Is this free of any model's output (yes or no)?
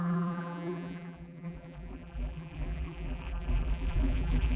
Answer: no